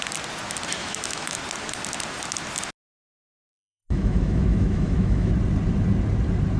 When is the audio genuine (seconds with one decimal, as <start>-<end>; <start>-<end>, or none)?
0.0-0.8; 1.4-3.4; 5.3-6.6